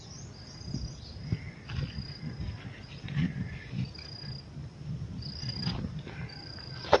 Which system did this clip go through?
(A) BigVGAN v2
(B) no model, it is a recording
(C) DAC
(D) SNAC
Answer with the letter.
B